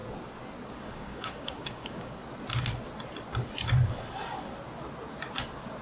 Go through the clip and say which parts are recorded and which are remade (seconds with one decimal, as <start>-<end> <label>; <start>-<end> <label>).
0.0-0.7 recorded; 0.7-2.2 remade; 2.2-5.8 recorded